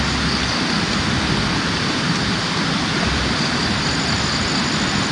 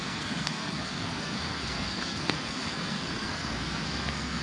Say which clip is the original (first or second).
first